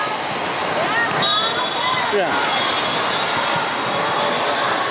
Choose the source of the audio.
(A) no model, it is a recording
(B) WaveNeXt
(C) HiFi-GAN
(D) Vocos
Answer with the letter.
A